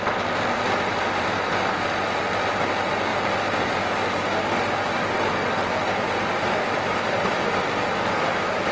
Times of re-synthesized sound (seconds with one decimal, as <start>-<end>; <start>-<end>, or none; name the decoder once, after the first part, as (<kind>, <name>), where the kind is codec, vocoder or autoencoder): none